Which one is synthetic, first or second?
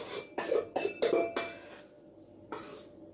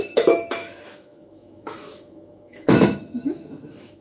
second